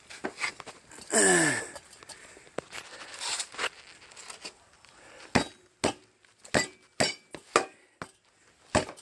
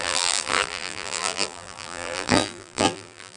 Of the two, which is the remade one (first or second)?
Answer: second